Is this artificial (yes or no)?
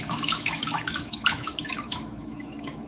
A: yes